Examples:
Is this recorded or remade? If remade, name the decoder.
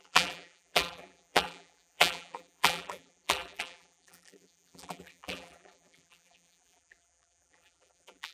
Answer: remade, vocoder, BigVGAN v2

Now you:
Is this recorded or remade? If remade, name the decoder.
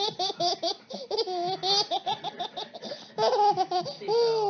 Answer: recorded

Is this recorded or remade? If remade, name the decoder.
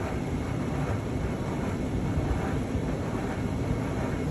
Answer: remade, vocoder, BigVGAN v2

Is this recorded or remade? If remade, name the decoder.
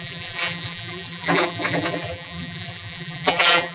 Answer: remade, vocoder, BigVGAN v2